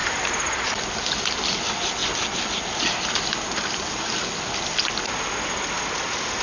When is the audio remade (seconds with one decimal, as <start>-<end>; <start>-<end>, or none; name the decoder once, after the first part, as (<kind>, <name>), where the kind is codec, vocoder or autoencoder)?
none